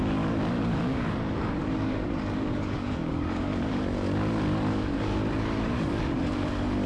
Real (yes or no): no